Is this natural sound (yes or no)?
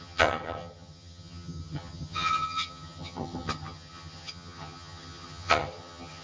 no